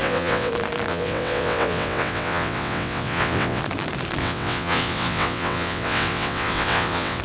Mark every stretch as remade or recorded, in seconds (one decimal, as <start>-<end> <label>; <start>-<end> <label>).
0.0-0.5 remade; 0.5-0.9 recorded; 0.9-3.6 remade; 3.6-4.2 recorded; 4.2-7.2 remade